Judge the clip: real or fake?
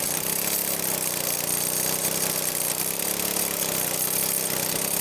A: real